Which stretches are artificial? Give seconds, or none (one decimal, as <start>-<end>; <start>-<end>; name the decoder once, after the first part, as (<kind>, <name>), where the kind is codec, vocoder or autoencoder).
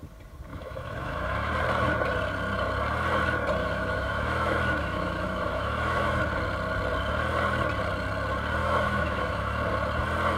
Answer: 0.5-1.5 (autoencoder, DAC-VAE); 3.6-6.2; 8.6-9.5